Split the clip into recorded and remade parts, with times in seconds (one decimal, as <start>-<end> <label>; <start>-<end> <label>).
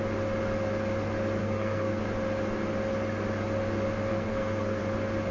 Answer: 0.0-1.4 recorded; 1.4-2.0 remade; 2.0-4.1 recorded; 4.1-4.8 remade; 4.8-5.3 recorded